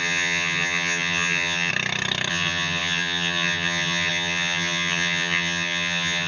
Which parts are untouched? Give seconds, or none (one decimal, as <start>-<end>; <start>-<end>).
1.7-2.3